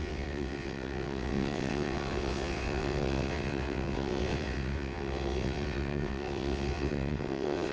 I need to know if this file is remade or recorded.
remade